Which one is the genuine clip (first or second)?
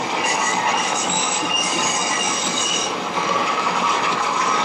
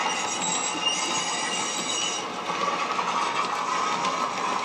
second